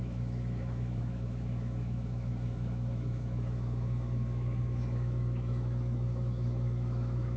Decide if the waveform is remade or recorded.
remade